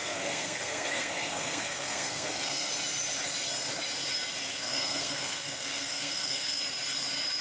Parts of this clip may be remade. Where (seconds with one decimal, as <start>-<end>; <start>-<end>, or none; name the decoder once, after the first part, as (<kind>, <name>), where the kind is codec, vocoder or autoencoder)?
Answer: 0.0-2.7 (codec, SNAC); 4.5-6.6